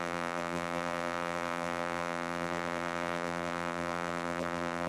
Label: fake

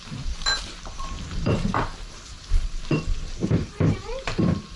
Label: fake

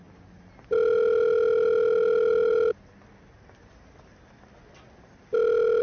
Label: real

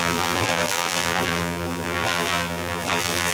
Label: fake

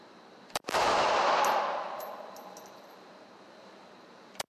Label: fake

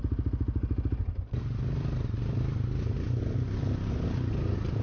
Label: real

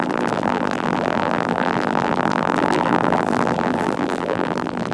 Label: fake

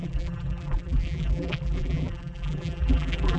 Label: fake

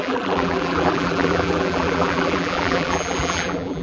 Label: fake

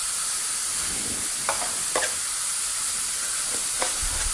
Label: fake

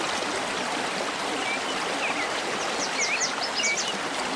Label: real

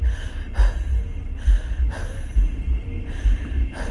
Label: real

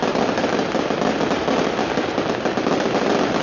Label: real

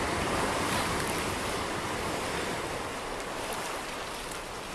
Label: fake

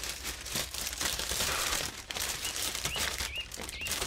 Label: fake